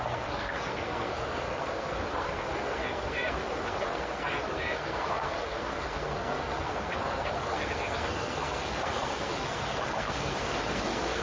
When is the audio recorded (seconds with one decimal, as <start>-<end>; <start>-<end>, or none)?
none